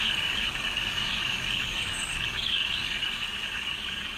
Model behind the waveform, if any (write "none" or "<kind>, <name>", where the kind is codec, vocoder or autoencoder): codec, DAC